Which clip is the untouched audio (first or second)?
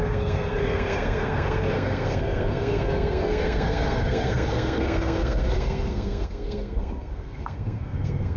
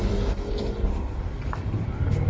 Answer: second